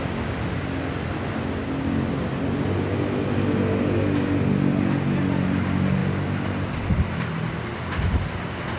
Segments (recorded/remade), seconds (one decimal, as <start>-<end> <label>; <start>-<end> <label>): 0.0-8.8 recorded